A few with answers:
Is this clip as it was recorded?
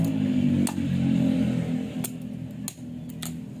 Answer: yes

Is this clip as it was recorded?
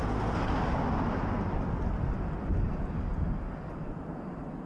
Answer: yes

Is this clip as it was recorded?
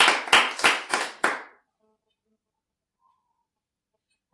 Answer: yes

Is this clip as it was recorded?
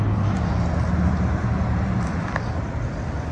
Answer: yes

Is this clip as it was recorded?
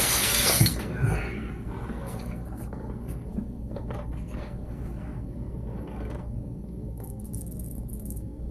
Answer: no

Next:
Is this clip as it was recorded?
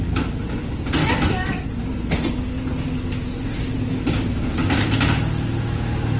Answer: yes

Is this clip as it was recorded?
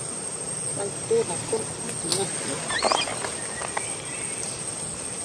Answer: yes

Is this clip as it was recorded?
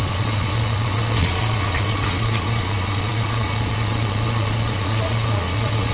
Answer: no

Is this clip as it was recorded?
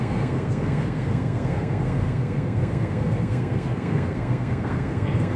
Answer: no